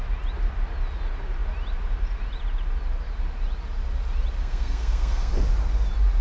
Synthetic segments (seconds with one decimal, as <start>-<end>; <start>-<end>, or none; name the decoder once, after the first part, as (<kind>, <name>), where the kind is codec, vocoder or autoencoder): 4.4-5.3 (codec, SNAC)